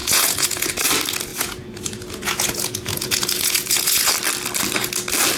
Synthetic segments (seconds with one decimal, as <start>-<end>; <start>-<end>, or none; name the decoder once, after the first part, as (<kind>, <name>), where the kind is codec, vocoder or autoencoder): 0.0-0.7 (vocoder, Vocos); 1.3-4.1